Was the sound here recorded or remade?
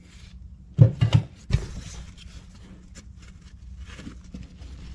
recorded